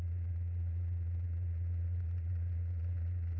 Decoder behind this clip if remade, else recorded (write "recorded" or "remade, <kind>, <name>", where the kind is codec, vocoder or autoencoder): remade, vocoder, Vocos